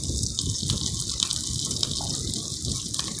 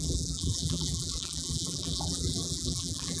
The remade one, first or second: second